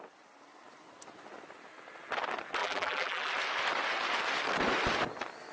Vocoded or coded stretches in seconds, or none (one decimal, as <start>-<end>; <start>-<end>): 2.6-3.3